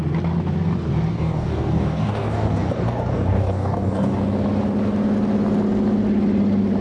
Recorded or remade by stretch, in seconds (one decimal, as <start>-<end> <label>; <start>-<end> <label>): 0.0-1.1 recorded; 1.1-4.2 remade; 4.2-6.8 recorded